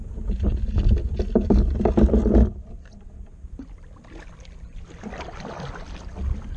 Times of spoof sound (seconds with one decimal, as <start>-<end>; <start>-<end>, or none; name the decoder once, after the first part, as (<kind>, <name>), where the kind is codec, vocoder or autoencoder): 0.0-0.6 (vocoder, BigVGAN v2)